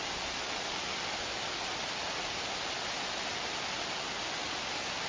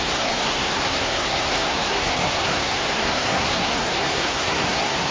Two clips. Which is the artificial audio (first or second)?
second